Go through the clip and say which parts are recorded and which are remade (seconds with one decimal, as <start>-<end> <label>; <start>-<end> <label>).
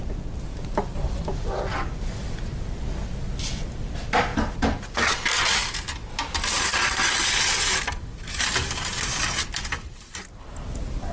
0.0-11.1 recorded